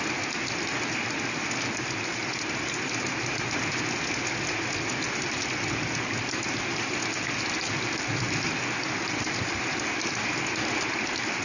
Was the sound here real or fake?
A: real